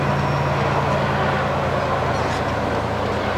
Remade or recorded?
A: recorded